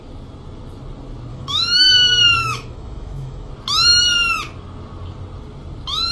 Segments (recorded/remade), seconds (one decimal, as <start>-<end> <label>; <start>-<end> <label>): 0.0-1.3 recorded; 1.3-1.9 remade; 1.9-2.4 recorded; 2.4-3.5 remade; 3.5-6.1 recorded